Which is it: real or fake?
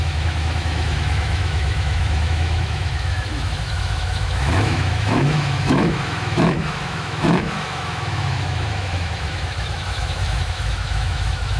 fake